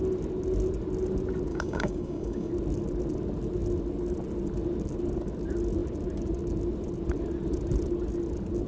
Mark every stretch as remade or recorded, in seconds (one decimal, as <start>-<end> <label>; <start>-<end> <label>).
0.0-1.5 recorded; 1.5-2.5 remade; 2.5-8.7 recorded